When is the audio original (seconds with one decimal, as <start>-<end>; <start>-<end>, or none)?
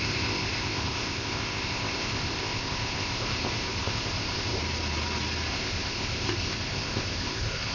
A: 4.6-5.5